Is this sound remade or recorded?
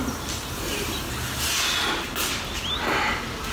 recorded